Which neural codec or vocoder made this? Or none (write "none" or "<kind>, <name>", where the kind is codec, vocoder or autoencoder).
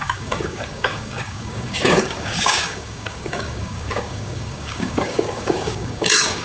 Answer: codec, DAC